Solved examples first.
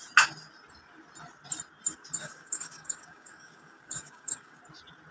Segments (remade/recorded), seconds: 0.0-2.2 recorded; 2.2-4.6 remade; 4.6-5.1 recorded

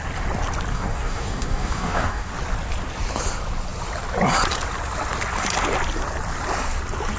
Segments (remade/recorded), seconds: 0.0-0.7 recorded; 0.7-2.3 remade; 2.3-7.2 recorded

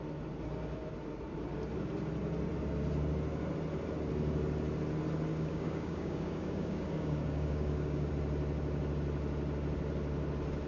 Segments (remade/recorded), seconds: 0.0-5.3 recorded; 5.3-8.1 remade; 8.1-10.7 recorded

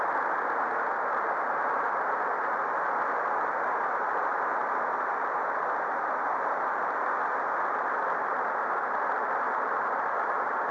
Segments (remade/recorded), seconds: 0.0-10.7 recorded

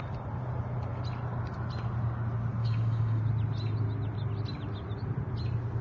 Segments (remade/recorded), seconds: 0.0-2.6 recorded; 2.6-3.2 remade; 3.2-5.8 recorded

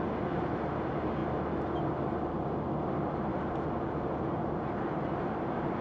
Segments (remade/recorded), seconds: 0.0-5.8 recorded